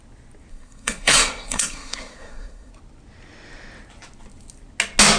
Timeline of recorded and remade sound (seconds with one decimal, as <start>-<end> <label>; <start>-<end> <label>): 0.0-0.5 recorded; 0.5-2.7 remade; 2.7-5.2 recorded